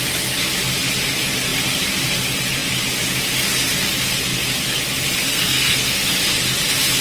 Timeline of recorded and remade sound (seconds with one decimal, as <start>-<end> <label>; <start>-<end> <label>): 0.0-5.3 recorded; 5.3-6.1 remade; 6.1-7.0 recorded